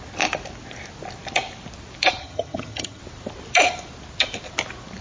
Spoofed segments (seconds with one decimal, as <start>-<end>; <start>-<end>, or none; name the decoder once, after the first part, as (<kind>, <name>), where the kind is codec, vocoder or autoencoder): 2.2-3.0 (vocoder, HiFi-GAN)